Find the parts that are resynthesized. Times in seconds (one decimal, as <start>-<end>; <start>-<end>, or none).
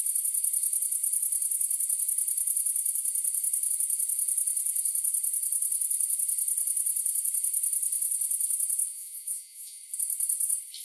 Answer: 8.9-9.8